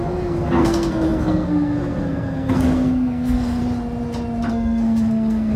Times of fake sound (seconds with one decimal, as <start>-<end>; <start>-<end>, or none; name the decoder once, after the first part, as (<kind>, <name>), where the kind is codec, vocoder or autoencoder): 0.0-3.6 (codec, SNAC); 4.5-5.6